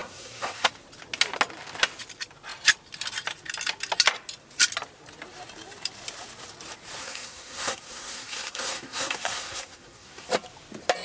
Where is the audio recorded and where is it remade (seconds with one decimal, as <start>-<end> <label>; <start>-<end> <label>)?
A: 0.0-0.7 remade; 0.7-7.0 recorded; 7.0-10.3 remade; 10.3-11.0 recorded